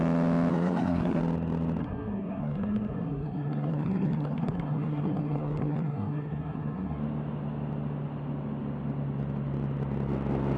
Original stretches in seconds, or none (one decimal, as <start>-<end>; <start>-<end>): 0.0-0.5; 1.2-1.8; 7.0-10.6